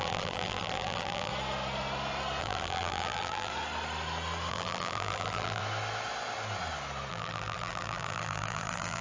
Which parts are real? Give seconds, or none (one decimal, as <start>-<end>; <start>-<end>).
1.3-2.4; 3.5-4.5; 5.6-7.1